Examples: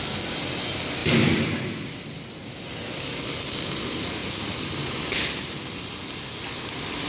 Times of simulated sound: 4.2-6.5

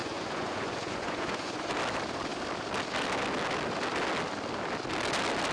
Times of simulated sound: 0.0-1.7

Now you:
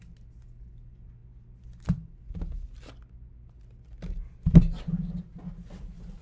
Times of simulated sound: none